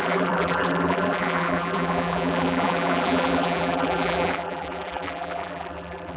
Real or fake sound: fake